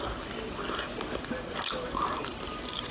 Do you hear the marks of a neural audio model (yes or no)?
no